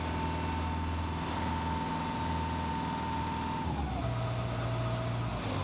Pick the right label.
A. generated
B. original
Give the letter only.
B